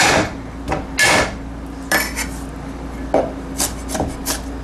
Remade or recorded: recorded